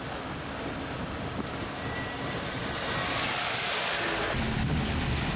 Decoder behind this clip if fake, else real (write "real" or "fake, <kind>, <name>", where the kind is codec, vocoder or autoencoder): real